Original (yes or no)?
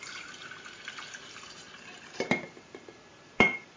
no